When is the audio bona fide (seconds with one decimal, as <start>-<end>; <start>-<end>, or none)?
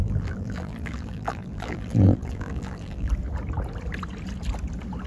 3.1-5.1